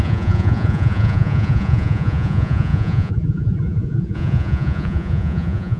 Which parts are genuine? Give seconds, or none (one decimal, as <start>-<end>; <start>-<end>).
none